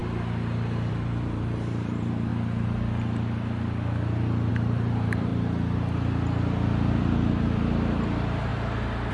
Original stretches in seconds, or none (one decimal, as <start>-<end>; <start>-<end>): 0.0-0.9; 2.3-4.5; 5.3-6.9; 8.5-9.1